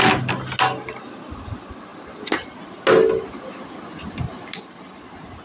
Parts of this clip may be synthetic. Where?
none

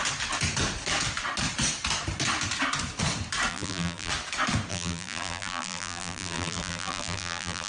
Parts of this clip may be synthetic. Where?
3.5-4.1 (vocoder, BigVGAN v2); 4.7-7.7

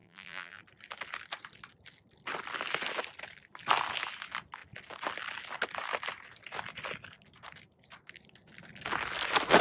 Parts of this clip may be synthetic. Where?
0.0-0.6 (vocoder, BigVGAN v2)

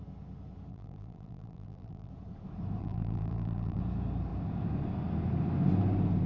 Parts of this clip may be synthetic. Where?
0.7-2.1 (vocoder, BigVGAN v2); 2.8-3.8

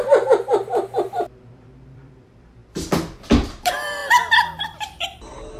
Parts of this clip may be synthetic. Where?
0.0-2.6 (vocoder, BigVGAN v2); 3.5-5.6

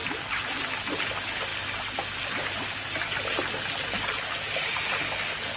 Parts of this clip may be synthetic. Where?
none

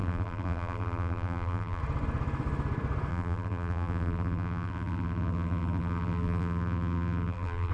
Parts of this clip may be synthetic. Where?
0.0-1.8 (vocoder, BigVGAN v2); 3.1-7.7

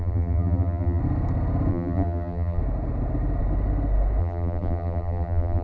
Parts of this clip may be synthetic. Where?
0.0-1.0 (vocoder, BigVGAN v2); 1.7-2.6; 4.2-5.6